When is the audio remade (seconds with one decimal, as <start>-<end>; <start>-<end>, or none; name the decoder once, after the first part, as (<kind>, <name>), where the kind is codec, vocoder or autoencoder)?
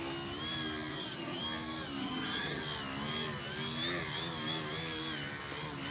0.9-1.4 (vocoder, HiFi-GAN); 2.0-2.6